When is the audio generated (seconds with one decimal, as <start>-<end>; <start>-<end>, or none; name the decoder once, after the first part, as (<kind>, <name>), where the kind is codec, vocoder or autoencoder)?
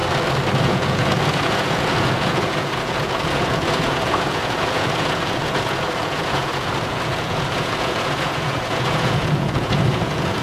0.6-10.4 (vocoder, Vocos)